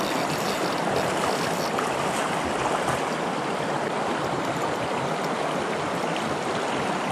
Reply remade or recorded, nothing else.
recorded